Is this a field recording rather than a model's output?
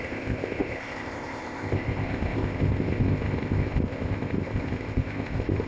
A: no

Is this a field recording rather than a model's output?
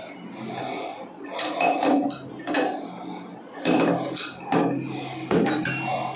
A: yes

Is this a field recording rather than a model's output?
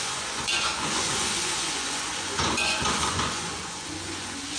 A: no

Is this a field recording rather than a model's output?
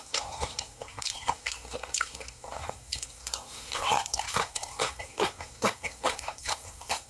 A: no